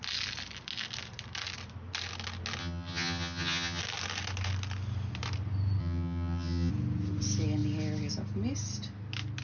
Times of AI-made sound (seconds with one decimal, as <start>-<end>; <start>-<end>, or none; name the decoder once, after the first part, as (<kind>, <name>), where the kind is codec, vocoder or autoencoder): 2.6-3.8 (vocoder, HiFi-GAN); 5.8-6.7